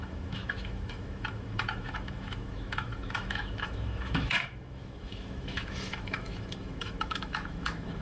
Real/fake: fake